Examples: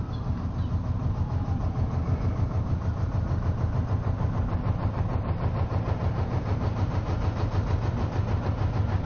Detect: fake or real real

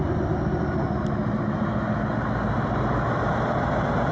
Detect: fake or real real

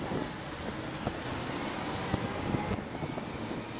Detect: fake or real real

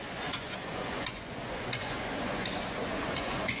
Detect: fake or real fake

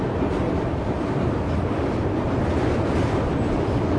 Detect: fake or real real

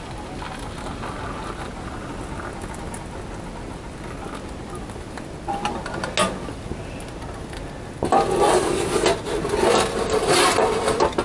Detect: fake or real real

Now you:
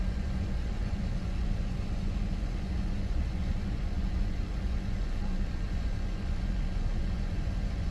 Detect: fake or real fake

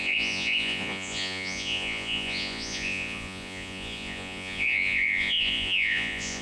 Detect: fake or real fake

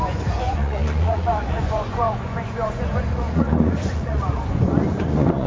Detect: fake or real fake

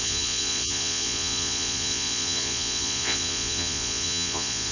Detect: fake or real fake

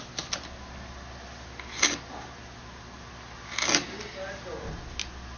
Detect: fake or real real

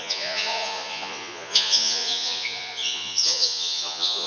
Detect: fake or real fake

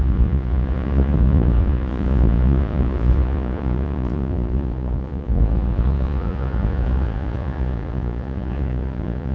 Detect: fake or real fake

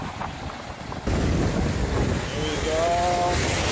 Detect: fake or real real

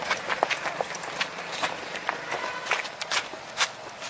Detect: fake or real real